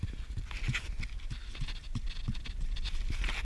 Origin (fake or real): real